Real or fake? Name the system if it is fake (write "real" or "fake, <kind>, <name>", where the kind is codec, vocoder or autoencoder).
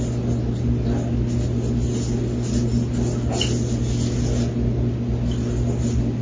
real